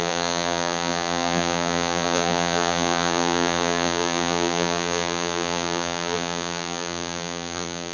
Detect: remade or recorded remade